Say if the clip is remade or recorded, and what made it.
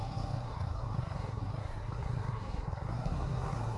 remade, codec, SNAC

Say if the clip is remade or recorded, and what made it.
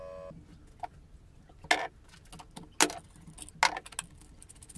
recorded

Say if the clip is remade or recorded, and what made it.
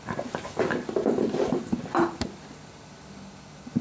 recorded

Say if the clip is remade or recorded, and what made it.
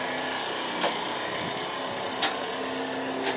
recorded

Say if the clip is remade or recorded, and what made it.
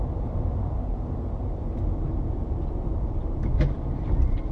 recorded